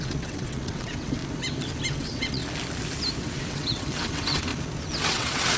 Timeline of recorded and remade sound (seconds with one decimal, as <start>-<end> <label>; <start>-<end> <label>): 0.0-1.2 remade; 1.2-1.9 recorded; 1.9-2.4 remade; 2.4-3.2 recorded; 3.2-4.5 remade; 4.5-5.0 recorded; 5.0-5.6 remade